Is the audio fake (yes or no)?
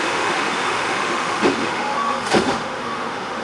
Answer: yes